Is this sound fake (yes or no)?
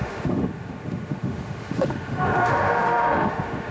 yes